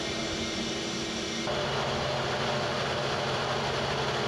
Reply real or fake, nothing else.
real